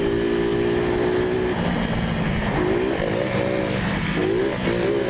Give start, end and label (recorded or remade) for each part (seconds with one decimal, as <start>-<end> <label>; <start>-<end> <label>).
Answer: 0.0-5.1 recorded